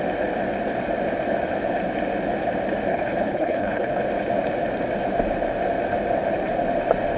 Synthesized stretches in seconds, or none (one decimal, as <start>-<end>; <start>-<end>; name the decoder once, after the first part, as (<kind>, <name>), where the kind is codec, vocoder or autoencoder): 2.9-4.0 (codec, HILCodec)

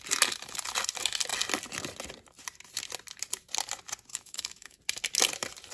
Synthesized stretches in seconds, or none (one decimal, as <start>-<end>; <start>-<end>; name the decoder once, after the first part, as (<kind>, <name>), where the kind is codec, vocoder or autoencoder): 4.1-4.8 (autoencoder, DAC-VAE)

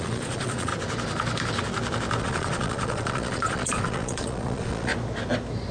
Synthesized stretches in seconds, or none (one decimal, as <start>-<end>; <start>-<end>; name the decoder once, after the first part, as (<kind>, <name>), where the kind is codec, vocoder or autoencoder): 0.0-0.7 (vocoder, Vocos); 2.2-4.9

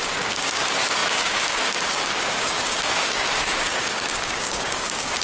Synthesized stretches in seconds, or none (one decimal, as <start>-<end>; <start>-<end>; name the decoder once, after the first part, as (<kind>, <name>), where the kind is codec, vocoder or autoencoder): 0.0-5.2 (codec, DAC)

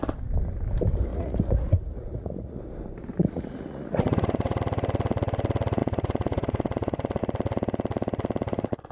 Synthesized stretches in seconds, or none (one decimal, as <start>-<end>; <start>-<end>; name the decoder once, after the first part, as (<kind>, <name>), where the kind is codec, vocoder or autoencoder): 1.1-2.6 (vocoder, Vocos); 3.1-4.6; 5.8-7.2

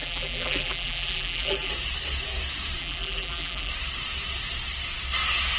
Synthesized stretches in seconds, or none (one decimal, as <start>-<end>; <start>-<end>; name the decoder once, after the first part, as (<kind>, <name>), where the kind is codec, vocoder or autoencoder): 0.0-1.7 (vocoder, BigVGAN v2); 2.8-3.7

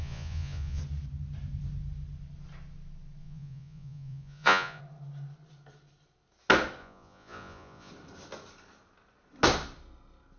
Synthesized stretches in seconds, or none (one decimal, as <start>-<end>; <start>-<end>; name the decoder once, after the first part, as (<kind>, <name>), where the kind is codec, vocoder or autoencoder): 0.0-0.8 (vocoder, Vocos); 3.2-4.8; 6.8-7.9

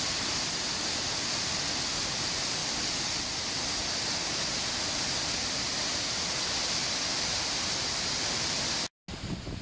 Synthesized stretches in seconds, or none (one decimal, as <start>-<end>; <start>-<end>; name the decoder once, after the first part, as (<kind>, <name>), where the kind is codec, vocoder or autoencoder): none